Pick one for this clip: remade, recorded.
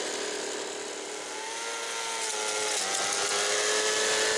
recorded